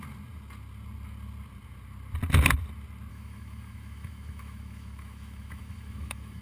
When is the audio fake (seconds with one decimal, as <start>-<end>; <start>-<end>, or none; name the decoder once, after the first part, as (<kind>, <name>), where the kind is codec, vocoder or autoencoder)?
3.1-6.4 (autoencoder, DAC-VAE)